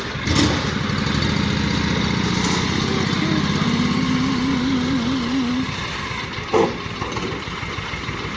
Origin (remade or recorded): recorded